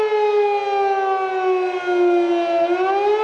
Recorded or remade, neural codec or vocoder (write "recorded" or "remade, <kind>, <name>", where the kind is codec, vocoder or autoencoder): recorded